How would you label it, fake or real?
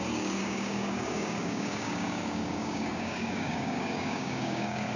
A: fake